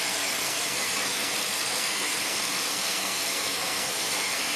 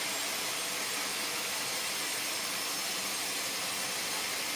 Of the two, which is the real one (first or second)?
second